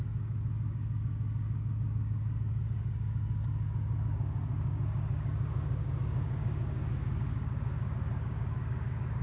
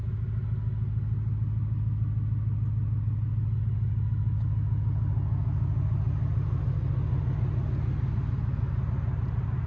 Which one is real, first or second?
second